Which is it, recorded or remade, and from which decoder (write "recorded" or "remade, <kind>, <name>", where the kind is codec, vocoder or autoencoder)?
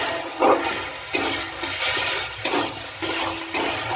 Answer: recorded